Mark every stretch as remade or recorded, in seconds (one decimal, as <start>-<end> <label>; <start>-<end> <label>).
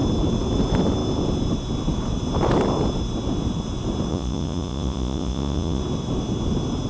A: 0.0-4.1 recorded; 4.1-5.8 remade; 5.8-6.9 recorded